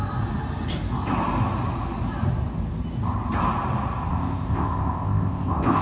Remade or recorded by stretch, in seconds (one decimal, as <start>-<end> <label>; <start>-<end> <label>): 0.0-4.1 recorded; 4.1-5.8 remade